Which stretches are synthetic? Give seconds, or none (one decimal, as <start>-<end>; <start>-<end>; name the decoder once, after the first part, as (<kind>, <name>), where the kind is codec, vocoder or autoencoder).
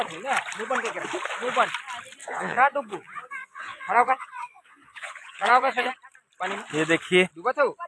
2.2-5.9 (vocoder, Vocos)